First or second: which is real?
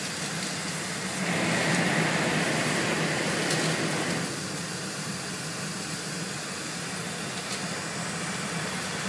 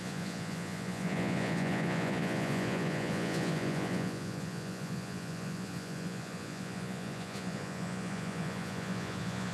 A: first